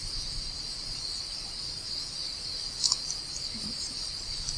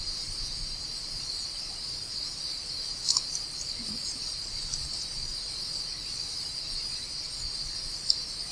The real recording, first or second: first